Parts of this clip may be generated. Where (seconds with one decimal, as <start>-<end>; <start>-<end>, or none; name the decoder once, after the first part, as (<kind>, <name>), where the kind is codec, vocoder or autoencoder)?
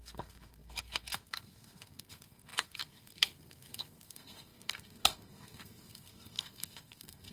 0.0-7.3 (codec, SNAC)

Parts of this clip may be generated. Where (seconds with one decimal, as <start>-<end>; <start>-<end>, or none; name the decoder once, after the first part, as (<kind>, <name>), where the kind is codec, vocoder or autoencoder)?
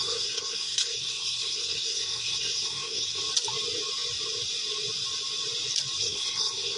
0.0-3.2 (codec, SNAC); 6.0-6.8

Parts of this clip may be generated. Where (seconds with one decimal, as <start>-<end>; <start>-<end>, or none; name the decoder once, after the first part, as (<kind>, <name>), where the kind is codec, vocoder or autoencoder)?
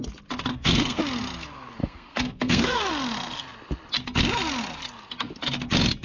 0.5-1.0 (codec, SNAC); 1.8-2.9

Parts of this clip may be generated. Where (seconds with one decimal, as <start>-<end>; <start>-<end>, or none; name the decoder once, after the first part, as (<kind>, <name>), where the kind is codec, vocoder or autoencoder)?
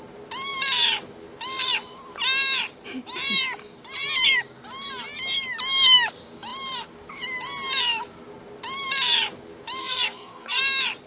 9.8-10.6 (codec, SNAC)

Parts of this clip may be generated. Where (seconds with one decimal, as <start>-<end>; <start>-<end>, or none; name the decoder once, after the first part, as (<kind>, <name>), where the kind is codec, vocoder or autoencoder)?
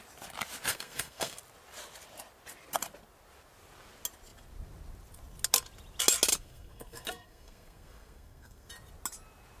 0.7-1.4 (codec, SNAC); 6.3-8.7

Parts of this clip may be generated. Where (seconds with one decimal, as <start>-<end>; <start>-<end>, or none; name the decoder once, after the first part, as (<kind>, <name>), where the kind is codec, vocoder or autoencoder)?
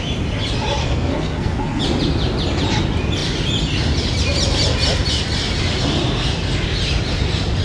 0.8-1.8 (codec, SNAC)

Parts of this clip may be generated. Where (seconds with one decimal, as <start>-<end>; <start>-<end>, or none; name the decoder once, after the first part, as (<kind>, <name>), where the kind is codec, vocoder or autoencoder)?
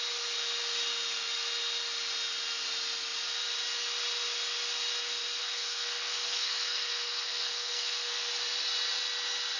5.4-8.3 (codec, SNAC)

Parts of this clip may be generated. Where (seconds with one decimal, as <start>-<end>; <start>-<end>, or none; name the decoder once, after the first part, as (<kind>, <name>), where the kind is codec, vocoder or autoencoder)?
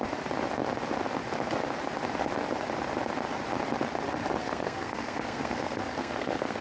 4.4-6.6 (codec, SNAC)